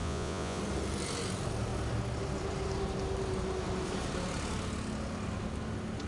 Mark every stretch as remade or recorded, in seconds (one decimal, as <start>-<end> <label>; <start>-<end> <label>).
0.0-0.6 remade; 0.6-6.1 recorded